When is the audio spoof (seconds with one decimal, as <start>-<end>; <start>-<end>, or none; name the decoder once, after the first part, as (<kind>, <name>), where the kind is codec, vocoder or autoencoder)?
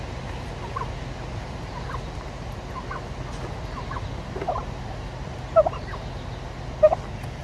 none